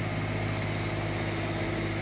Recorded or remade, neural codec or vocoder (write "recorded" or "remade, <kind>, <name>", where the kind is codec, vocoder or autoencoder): recorded